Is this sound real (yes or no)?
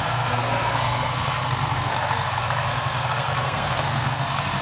no